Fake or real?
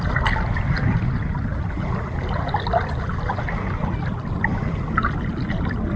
real